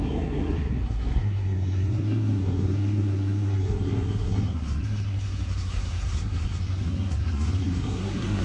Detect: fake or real fake